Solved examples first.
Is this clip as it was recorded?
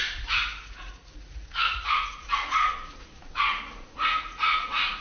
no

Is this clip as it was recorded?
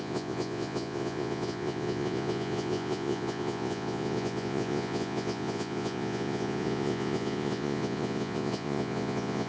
no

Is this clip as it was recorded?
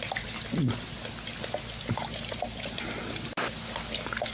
yes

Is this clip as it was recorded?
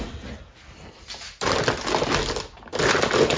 yes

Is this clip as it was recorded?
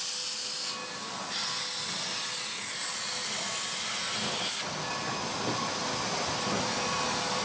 yes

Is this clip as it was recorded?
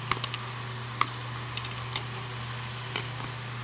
yes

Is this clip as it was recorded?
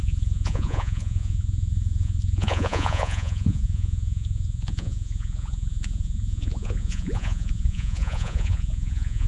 no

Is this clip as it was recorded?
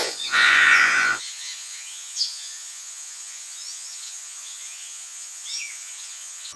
no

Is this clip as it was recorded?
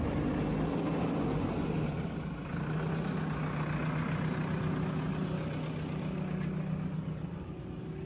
yes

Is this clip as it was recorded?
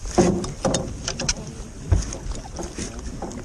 yes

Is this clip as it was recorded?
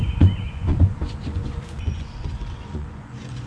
no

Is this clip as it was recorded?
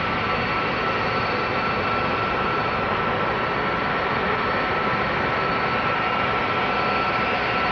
yes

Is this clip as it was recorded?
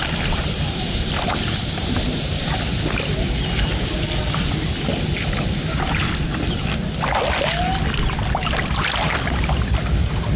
yes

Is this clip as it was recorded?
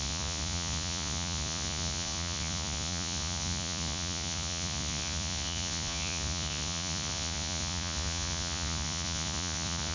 no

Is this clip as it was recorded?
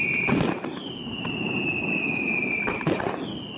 yes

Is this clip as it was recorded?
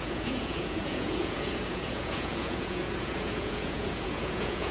no